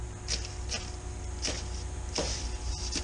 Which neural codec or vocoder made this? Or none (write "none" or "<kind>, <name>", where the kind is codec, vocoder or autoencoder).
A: none